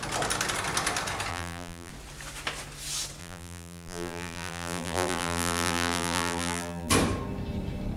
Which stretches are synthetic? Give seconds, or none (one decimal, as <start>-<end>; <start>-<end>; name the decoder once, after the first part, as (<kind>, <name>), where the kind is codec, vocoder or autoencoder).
1.3-1.9 (vocoder, BigVGAN v2); 3.2-6.9